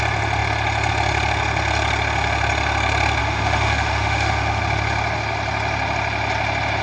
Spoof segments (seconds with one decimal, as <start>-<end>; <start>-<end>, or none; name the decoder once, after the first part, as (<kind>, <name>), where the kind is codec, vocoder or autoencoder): 3.2-4.6 (autoencoder, DAC-VAE)